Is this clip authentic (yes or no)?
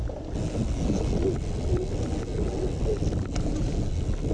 yes